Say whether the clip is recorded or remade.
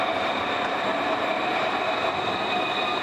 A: recorded